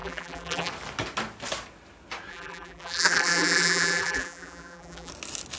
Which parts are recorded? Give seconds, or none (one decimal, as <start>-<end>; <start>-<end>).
0.7-2.3; 5.1-5.6